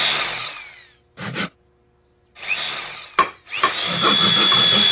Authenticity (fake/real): real